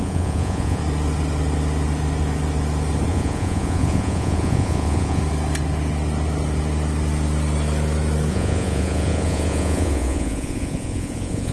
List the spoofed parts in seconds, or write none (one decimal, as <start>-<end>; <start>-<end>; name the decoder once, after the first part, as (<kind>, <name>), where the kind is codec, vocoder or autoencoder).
0.0-0.8 (vocoder, Vocos); 3.1-5.2; 8.3-11.5